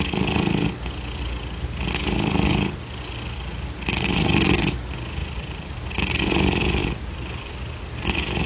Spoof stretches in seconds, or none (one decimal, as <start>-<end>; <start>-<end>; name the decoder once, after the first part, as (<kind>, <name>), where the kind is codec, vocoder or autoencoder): 5.2-5.8 (vocoder, BigVGAN v2); 6.8-7.8